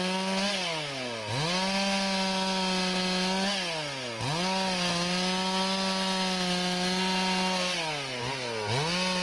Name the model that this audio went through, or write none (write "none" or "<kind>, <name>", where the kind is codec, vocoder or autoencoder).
none